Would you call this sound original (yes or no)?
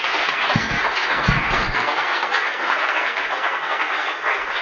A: no